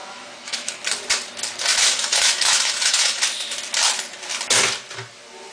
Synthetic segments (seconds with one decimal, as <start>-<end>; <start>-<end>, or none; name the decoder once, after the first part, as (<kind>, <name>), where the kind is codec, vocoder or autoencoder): 0.0-0.7 (autoencoder, DAC-VAE); 1.7-3.2